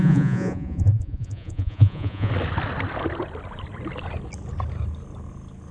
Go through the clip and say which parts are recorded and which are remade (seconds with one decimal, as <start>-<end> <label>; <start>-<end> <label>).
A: 0.0-2.3 remade; 2.3-5.7 recorded